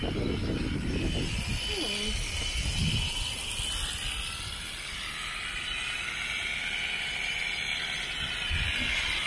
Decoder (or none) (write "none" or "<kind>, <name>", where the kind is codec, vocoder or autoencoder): none